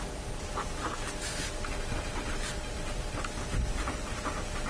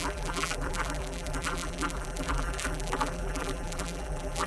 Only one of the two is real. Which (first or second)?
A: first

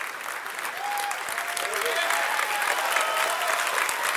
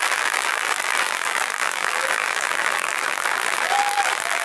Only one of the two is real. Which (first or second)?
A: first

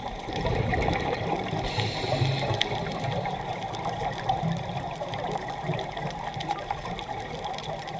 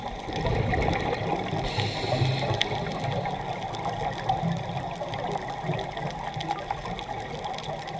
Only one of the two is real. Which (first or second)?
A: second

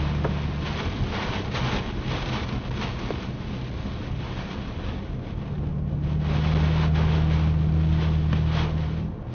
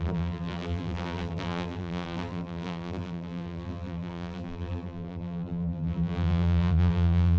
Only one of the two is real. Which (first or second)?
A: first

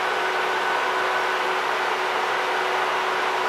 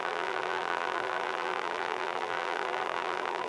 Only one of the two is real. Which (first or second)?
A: first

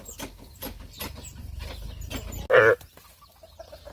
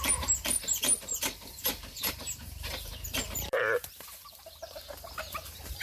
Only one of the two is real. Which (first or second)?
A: first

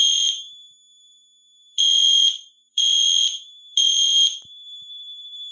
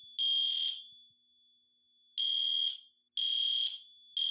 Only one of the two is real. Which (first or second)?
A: second